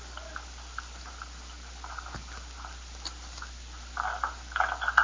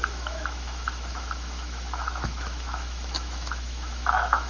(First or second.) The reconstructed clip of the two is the second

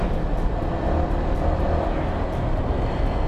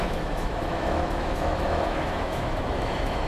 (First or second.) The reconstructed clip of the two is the second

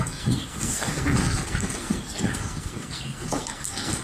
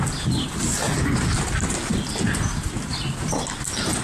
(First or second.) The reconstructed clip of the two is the first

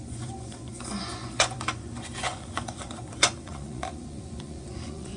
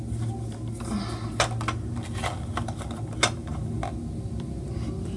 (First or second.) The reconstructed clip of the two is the first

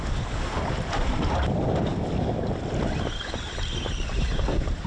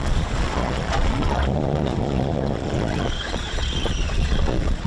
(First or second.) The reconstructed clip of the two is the second